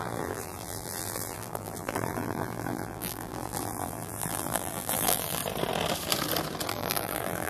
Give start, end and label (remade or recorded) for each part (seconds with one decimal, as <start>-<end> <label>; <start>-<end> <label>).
0.0-5.4 remade; 5.4-6.7 recorded; 6.7-7.5 remade